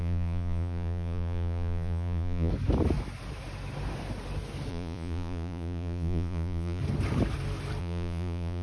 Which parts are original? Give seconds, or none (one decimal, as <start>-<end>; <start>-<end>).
2.5-4.7; 6.8-7.8